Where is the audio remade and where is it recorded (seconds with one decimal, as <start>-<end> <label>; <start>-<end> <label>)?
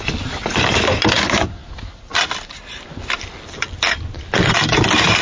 0.0-5.2 recorded